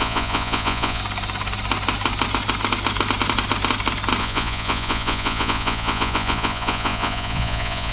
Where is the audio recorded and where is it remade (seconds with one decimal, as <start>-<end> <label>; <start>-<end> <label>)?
0.0-1.0 remade; 1.0-4.2 recorded; 4.2-7.9 remade